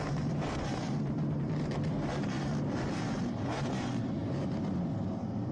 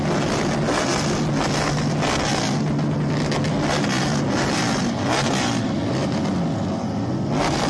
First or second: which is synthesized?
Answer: first